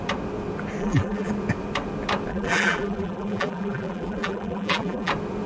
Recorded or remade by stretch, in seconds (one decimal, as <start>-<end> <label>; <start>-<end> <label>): 0.0-0.8 recorded; 0.8-1.3 remade; 1.3-2.3 recorded; 2.3-5.1 remade; 5.1-5.5 recorded